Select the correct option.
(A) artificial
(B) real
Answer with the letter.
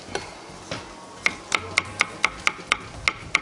B